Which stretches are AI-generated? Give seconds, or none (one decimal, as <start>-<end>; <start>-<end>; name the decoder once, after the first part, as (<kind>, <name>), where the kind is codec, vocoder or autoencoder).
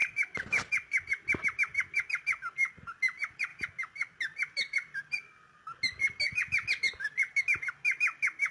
none